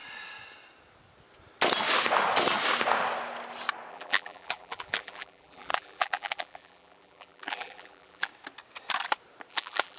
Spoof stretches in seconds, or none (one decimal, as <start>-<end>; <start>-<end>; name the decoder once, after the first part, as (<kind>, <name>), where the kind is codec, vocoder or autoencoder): 3.9-8.3 (vocoder, BigVGAN v2); 9.5-10.0